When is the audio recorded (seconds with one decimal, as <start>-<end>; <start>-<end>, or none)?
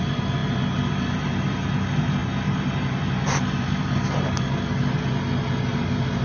0.0-6.2